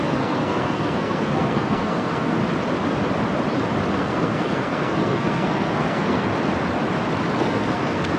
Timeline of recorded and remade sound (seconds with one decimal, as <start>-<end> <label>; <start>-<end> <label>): 0.0-2.4 remade; 2.4-3.9 recorded; 3.9-6.3 remade; 6.3-7.4 recorded; 7.4-8.2 remade

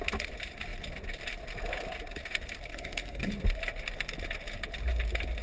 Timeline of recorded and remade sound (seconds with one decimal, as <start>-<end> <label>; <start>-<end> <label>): 0.0-2.7 recorded; 2.7-3.3 remade; 3.3-5.4 recorded

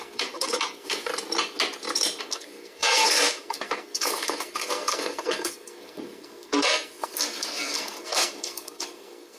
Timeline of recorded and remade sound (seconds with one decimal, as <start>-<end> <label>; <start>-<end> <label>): 0.0-1.1 remade; 1.1-2.2 recorded; 2.2-9.4 remade

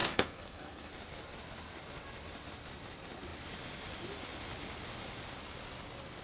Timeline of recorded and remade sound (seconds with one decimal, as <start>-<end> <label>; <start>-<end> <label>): 0.0-0.9 remade; 0.9-6.2 recorded